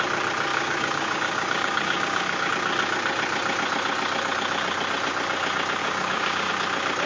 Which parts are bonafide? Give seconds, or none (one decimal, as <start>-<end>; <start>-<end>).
0.0-0.5; 2.5-5.8; 6.5-7.1